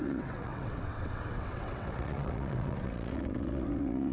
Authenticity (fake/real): fake